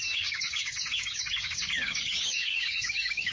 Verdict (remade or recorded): remade